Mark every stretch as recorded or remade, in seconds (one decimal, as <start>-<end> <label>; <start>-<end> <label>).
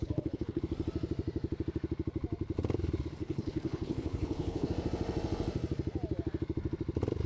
0.0-0.6 remade; 0.6-3.2 recorded; 3.2-4.7 remade; 4.7-7.3 recorded